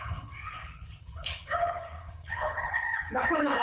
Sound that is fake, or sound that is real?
fake